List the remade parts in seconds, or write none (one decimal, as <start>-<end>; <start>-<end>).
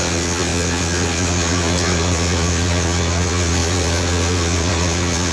0.0-5.3